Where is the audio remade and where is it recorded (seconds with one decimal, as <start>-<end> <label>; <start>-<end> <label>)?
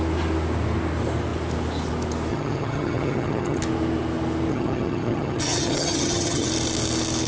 0.0-2.3 recorded; 2.3-3.6 remade; 3.6-4.5 recorded; 4.5-6.5 remade; 6.5-7.3 recorded